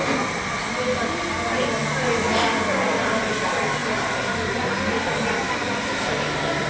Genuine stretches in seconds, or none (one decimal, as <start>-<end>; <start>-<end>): 0.0-6.7